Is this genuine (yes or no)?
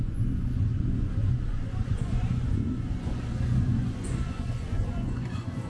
no